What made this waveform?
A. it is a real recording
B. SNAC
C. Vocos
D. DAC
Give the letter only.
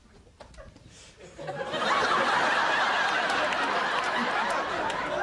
A